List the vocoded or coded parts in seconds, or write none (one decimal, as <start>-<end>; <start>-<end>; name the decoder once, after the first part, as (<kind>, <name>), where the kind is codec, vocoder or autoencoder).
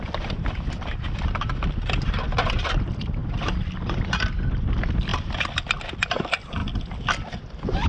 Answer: none